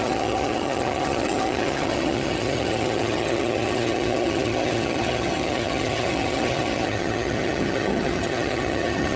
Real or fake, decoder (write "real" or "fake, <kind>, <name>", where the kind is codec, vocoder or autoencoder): fake, vocoder, HiFi-GAN